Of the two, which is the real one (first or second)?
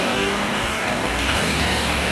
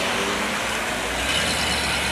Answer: second